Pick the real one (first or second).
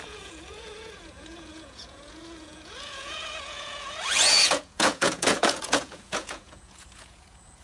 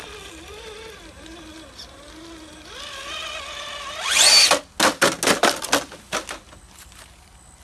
second